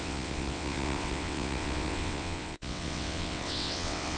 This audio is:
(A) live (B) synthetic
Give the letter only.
B